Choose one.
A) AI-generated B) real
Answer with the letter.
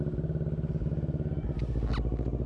B